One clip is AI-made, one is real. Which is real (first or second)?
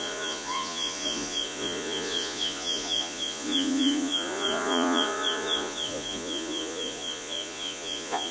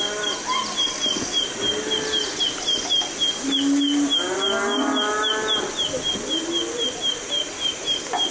second